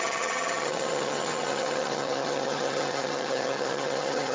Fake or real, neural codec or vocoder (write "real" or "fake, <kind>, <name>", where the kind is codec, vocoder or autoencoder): fake, vocoder, HiFi-GAN